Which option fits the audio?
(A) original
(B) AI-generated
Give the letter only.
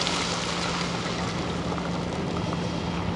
A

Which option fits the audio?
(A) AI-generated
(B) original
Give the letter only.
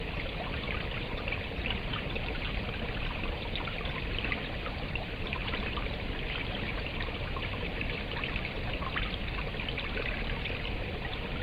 B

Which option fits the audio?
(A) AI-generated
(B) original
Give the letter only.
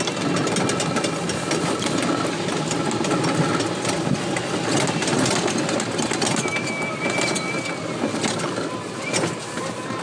B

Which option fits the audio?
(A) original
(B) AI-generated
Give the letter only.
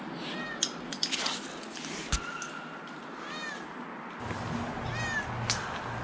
A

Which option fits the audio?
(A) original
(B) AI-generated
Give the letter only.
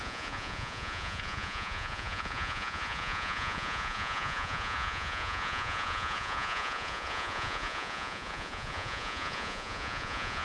B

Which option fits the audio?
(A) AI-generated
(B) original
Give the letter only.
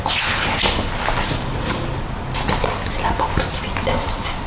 B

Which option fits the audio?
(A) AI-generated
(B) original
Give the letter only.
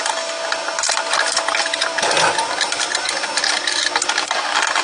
B